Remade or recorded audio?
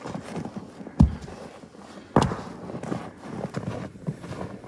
recorded